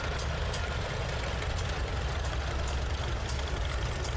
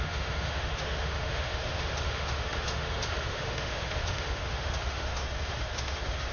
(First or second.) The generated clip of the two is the second